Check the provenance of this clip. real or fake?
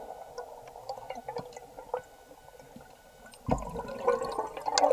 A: real